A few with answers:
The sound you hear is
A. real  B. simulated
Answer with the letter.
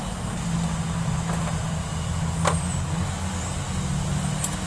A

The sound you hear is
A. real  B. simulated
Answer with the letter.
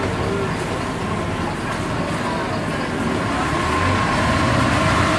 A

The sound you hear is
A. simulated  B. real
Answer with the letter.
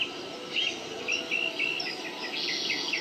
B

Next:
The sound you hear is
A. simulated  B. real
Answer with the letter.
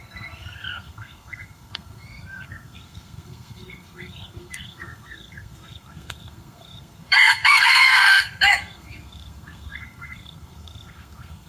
A